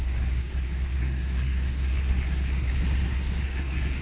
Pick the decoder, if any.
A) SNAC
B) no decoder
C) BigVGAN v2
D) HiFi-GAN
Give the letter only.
A